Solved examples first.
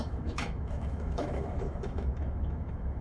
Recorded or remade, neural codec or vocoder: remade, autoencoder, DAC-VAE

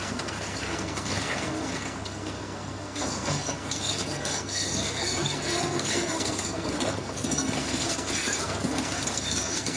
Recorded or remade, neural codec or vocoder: remade, codec, SNAC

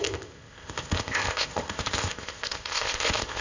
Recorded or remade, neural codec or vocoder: remade, codec, ZipCodec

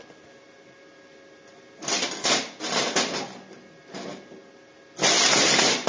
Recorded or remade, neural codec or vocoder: recorded